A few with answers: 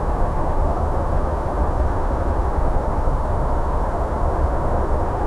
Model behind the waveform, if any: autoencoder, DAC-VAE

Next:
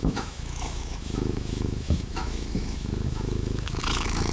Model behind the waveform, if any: autoencoder, DAC-VAE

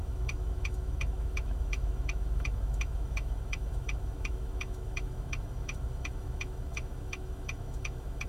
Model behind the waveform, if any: autoencoder, DAC-VAE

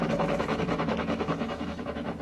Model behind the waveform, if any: autoencoder, DAC-VAE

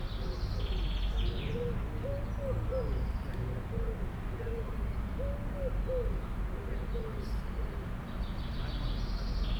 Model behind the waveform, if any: none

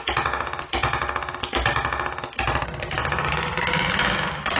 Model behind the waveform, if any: none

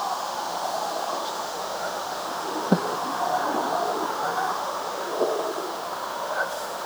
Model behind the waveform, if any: autoencoder, DAC-VAE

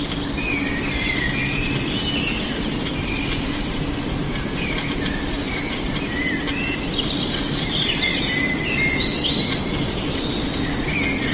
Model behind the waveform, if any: none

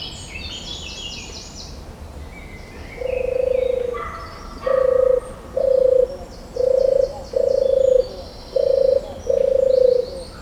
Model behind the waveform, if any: none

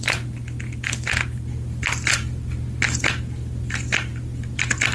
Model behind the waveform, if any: none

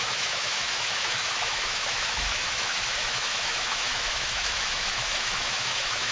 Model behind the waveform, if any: autoencoder, DAC-VAE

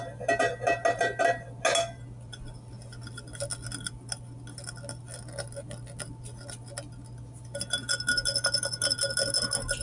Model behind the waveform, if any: none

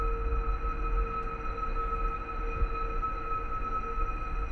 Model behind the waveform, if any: none